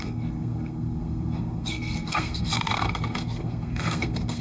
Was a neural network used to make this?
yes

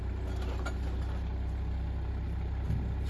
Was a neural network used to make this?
no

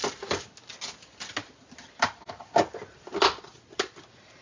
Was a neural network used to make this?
no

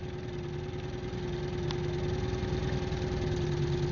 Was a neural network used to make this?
no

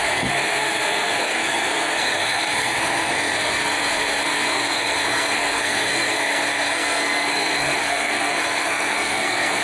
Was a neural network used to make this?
yes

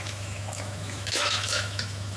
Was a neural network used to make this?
yes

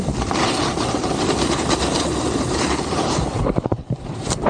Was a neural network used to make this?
yes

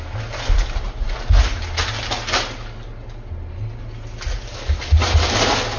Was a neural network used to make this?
no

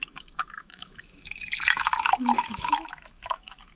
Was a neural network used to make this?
yes